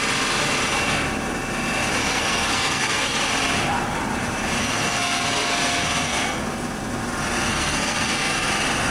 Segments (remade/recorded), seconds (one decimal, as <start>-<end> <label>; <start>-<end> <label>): 0.0-2.0 recorded; 2.0-3.3 remade; 3.3-4.6 recorded; 4.6-6.4 remade; 6.4-7.5 recorded; 7.5-8.5 remade; 8.5-8.9 recorded